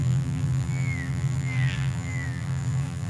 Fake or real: fake